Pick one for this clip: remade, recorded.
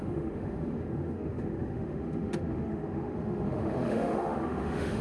remade